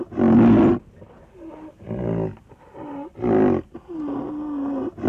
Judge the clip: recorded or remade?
recorded